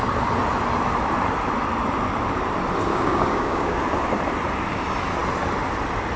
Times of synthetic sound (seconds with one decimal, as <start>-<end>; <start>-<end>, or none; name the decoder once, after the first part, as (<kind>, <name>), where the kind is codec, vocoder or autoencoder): 2.9-3.8 (codec, DAC)